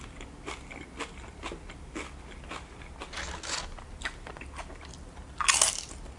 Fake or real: real